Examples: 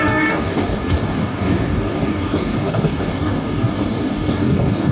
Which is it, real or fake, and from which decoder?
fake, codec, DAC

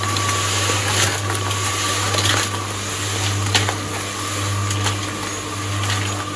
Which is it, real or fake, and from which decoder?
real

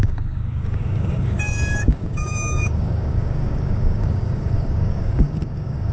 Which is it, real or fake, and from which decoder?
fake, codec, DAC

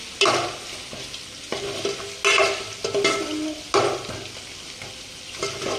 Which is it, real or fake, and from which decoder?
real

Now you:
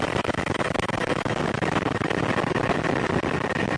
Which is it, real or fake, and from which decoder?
real